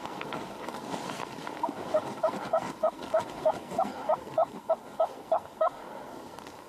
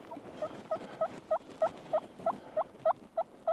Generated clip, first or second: first